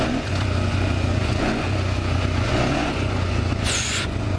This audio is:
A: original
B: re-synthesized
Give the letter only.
B